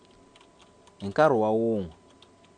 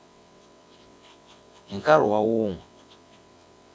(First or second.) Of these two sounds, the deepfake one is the second